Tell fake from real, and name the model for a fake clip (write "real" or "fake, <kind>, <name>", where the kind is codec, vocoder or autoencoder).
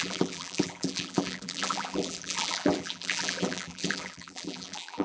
fake, vocoder, BigVGAN v2